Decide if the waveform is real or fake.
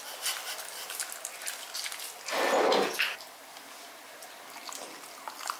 real